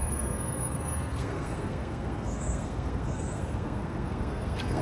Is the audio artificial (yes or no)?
yes